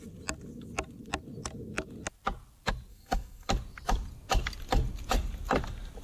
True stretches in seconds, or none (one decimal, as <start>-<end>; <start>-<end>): 0.0-2.9; 3.5-6.0